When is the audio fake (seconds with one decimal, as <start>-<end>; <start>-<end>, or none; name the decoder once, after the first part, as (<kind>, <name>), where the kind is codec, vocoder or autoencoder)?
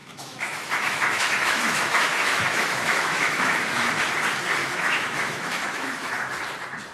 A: 0.0-4.1 (autoencoder, DAC-VAE); 4.6-6.1